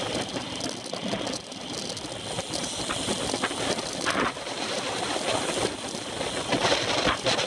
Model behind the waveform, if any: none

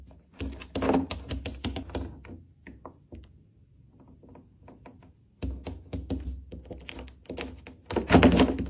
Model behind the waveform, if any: none